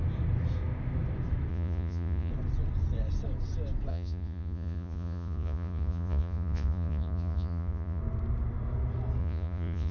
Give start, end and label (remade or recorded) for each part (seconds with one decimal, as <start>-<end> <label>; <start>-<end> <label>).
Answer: 0.0-1.5 recorded; 1.5-2.3 remade; 2.3-3.9 recorded; 3.9-8.0 remade; 8.0-9.2 recorded; 9.2-9.9 remade